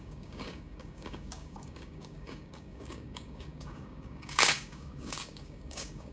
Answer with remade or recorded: remade